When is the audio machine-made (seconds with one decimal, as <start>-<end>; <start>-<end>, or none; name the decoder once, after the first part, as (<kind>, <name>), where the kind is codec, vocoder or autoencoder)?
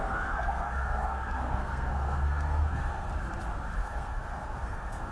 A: 0.0-3.1 (codec, SNAC); 3.8-5.1